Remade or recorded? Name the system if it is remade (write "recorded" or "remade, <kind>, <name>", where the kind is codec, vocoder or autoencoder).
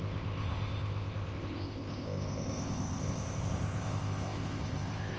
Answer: remade, codec, ZipCodec